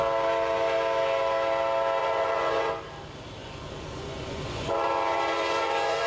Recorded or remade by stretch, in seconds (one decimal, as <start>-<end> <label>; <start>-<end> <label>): 0.0-2.0 recorded; 2.0-2.7 remade; 2.7-3.4 recorded; 3.4-6.1 remade